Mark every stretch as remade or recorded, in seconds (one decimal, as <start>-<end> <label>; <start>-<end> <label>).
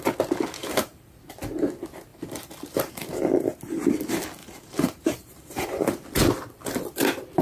0.0-0.6 recorded; 0.6-1.2 remade; 1.2-2.1 recorded; 2.1-2.9 remade; 2.9-4.4 recorded; 4.4-5.8 remade; 5.8-7.4 recorded